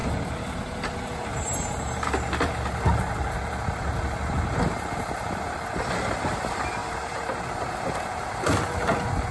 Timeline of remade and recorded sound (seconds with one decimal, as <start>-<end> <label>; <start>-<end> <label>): 0.0-1.3 recorded; 1.3-4.2 remade; 4.2-6.8 recorded; 6.8-8.4 remade; 8.4-9.3 recorded